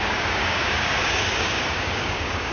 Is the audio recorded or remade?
remade